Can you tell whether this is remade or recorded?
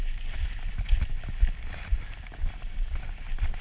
recorded